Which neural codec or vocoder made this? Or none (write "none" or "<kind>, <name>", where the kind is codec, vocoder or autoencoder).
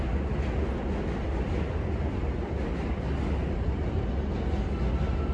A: none